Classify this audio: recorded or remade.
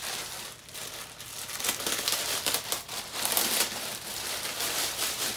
remade